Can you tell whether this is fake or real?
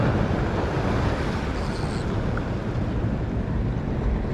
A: real